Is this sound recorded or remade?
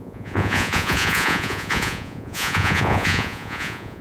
remade